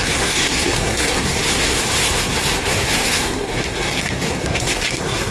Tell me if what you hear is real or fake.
fake